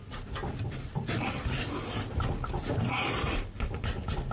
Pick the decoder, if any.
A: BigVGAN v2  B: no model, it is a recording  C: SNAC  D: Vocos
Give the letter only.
B